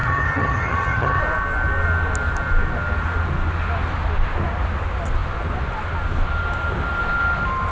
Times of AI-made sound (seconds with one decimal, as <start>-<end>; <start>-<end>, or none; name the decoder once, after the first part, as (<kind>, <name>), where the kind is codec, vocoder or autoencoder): 0.0-1.2 (vocoder, HiFi-GAN)